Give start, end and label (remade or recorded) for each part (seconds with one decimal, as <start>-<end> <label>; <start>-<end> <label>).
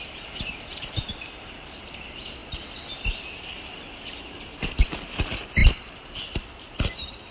0.0-2.4 remade; 2.4-3.4 recorded; 3.4-5.6 remade; 5.6-6.7 recorded; 6.7-7.3 remade